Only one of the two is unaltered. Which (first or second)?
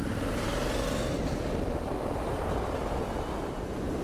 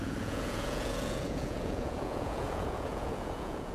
first